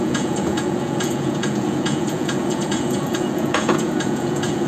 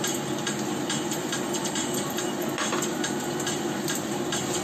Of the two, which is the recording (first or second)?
second